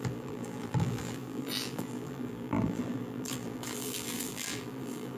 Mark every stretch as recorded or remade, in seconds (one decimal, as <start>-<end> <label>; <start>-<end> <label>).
0.0-5.2 remade